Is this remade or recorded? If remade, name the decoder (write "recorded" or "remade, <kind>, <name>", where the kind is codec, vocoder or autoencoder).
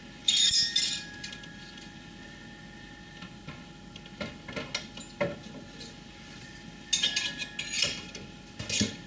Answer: recorded